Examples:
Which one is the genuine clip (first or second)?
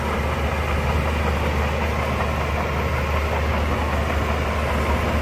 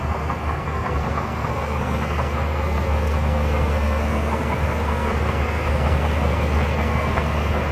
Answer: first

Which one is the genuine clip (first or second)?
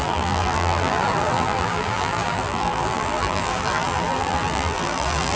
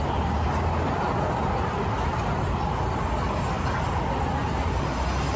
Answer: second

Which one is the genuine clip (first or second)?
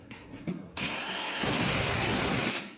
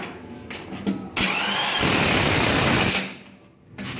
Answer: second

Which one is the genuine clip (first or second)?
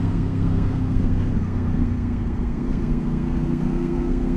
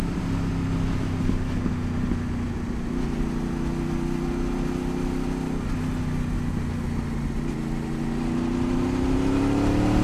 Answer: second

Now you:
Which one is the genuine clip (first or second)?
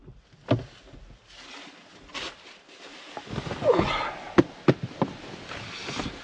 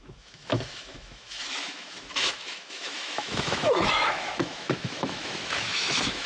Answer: first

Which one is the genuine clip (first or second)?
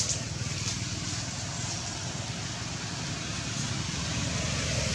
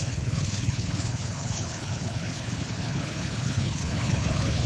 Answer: first